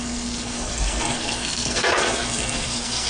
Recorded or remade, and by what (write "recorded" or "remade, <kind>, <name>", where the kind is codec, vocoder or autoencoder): remade, codec, SNAC